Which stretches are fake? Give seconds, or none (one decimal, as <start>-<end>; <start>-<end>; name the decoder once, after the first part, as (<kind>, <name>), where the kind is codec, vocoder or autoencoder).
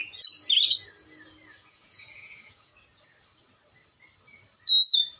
1.5-2.7 (vocoder, Vocos)